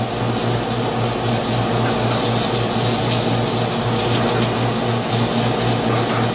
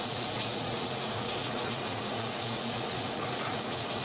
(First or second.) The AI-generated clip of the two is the second